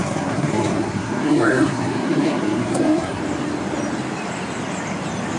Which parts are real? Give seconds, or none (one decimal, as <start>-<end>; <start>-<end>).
3.2-5.4